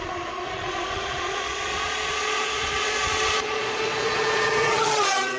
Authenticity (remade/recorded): remade